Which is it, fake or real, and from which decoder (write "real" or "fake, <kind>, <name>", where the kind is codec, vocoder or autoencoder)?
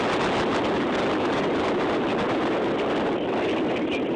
real